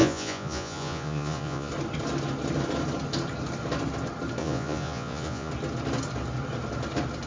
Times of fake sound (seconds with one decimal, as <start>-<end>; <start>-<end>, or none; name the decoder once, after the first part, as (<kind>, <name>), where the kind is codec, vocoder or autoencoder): 0.0-1.7 (vocoder, Vocos); 4.4-5.5